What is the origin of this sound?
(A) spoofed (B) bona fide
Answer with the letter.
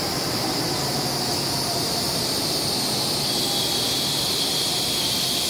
B